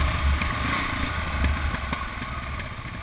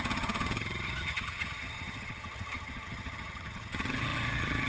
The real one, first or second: first